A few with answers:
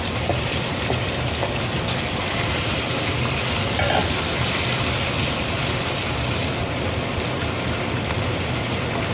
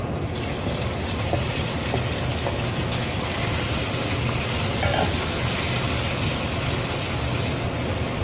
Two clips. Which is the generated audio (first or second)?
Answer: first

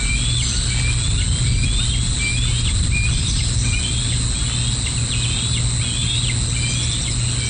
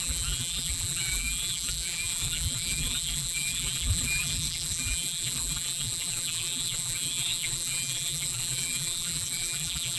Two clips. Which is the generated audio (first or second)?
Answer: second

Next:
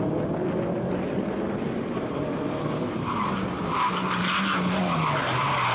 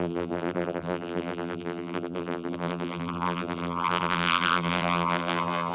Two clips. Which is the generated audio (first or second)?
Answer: second